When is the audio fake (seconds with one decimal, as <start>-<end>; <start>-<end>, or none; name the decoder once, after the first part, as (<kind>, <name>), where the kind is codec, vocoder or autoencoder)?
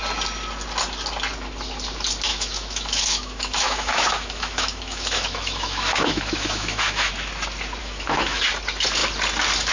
2.3-7.1 (autoencoder, DAC-VAE); 7.8-8.4